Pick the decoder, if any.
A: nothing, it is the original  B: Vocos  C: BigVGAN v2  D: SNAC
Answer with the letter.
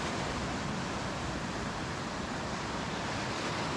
A